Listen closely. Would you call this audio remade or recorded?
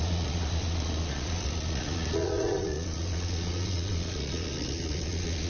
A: remade